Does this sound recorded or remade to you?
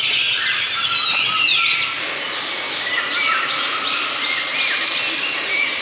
recorded